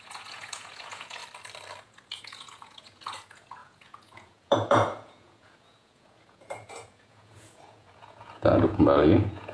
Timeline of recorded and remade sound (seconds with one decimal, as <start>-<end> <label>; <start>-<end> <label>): 0.0-1.2 remade; 1.2-1.8 recorded; 1.8-9.5 remade